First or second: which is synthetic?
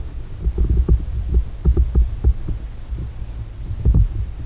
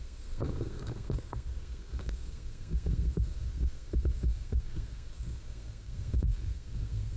second